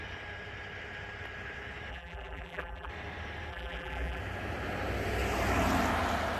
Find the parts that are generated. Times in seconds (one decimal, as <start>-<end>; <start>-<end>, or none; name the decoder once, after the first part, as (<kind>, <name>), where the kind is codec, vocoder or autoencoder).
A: 1.9-2.9 (vocoder, BigVGAN v2); 3.5-4.2